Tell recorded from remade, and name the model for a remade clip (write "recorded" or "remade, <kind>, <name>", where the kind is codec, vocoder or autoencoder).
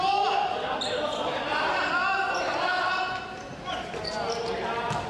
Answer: recorded